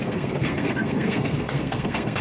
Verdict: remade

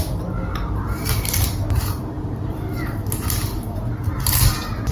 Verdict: recorded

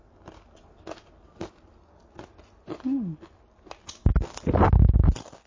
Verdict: recorded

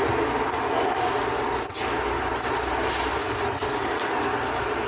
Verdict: recorded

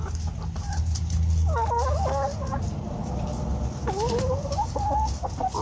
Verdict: recorded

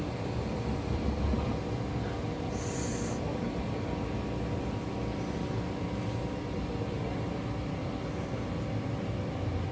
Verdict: recorded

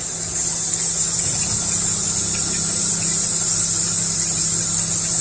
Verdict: recorded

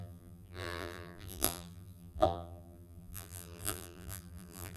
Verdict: remade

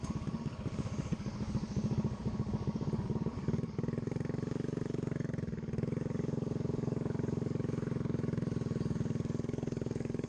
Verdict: remade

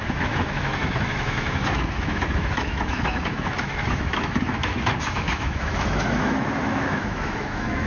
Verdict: remade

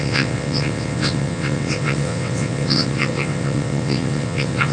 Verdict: remade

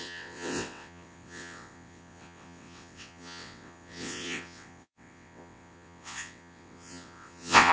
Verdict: remade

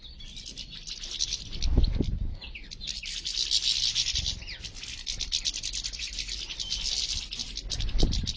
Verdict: recorded